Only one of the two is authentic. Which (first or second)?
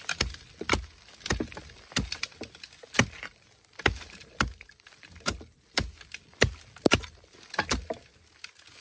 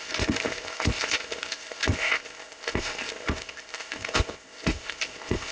first